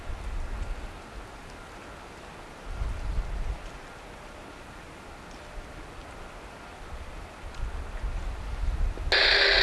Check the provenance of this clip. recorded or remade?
recorded